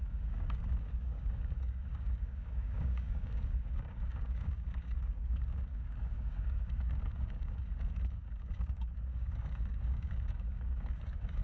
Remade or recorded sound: remade